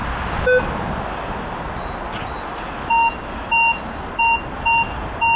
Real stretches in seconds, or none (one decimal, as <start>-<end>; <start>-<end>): 0.0-5.4